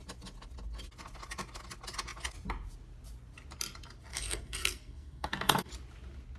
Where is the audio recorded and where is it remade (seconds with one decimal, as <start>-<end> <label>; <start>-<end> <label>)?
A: 0.0-4.1 recorded; 4.1-5.7 remade; 5.7-6.4 recorded